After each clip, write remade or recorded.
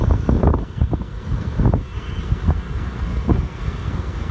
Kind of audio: remade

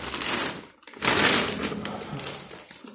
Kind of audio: recorded